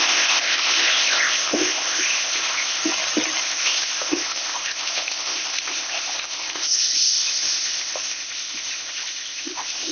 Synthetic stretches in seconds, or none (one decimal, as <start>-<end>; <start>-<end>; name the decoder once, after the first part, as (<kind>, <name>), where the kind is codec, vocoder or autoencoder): 0.0-2.8 (codec, ZipCodec); 3.4-9.9

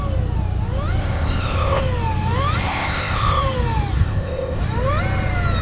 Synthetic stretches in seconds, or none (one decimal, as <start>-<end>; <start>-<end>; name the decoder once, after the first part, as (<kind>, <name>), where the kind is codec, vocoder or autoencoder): 1.0-1.8 (codec, ZipCodec); 2.6-3.4; 4.0-4.6

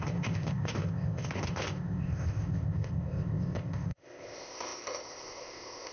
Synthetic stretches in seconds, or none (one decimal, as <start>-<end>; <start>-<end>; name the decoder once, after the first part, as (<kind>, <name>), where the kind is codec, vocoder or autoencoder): 0.0-5.9 (codec, ZipCodec)

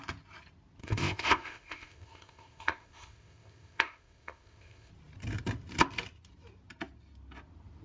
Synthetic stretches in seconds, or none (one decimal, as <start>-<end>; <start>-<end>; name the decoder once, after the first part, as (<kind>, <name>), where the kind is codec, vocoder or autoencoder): 0.8-4.9 (codec, ZipCodec)

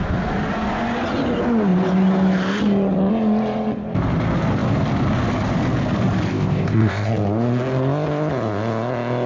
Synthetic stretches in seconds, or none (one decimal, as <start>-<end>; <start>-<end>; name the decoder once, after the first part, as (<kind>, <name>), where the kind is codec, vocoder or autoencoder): 6.3-7.1 (codec, ZipCodec)

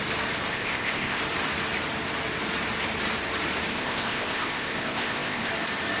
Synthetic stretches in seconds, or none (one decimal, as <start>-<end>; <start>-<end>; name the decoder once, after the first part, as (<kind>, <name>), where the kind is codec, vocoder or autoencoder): 0.5-1.2 (codec, ZipCodec); 3.7-5.5